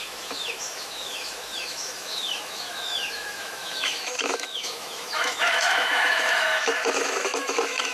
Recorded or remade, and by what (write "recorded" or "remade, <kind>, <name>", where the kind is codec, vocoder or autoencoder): remade, autoencoder, DAC-VAE